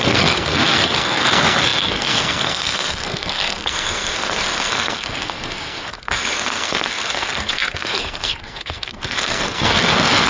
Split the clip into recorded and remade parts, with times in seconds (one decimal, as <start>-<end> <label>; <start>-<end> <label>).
0.0-10.3 remade